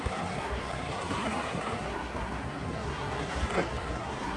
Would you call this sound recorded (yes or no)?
no